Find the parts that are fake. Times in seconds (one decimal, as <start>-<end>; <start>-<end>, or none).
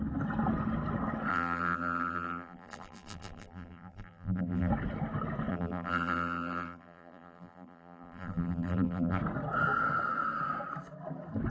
1.3-4.7; 5.5-9.2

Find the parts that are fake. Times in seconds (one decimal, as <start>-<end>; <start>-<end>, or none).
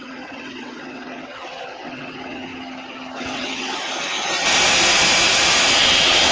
0.0-2.5; 3.2-3.7; 5.8-6.3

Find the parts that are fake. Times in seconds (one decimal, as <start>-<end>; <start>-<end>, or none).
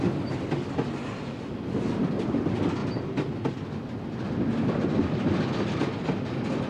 none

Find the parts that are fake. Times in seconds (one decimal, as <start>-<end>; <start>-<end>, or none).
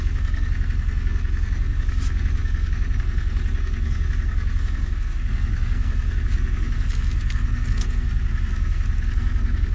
0.0-9.7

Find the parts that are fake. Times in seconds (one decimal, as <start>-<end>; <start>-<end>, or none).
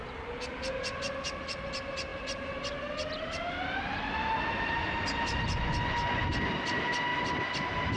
5.5-6.3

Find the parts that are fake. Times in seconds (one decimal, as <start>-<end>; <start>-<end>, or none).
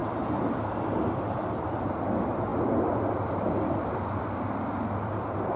1.0-5.6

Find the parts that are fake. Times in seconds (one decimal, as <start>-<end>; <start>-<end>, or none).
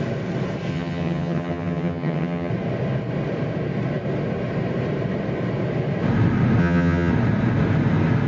0.7-2.5; 6.6-7.1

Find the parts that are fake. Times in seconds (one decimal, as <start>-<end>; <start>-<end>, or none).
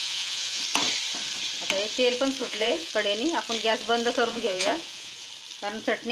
0.0-0.6; 2.4-2.9; 4.3-5.3